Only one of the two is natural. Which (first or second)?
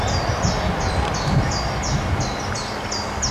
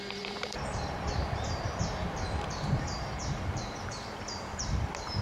first